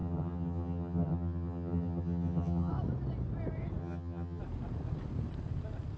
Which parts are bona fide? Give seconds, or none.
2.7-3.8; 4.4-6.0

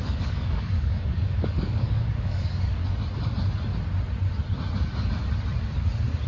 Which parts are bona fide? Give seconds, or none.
2.8-6.3